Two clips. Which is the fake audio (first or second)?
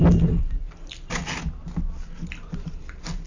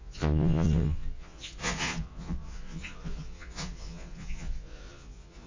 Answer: second